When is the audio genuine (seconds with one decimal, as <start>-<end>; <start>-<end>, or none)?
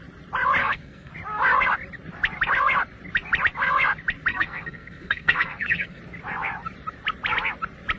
0.0-0.6; 1.1-4.3; 6.0-8.0